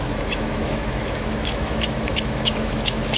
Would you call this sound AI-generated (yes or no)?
yes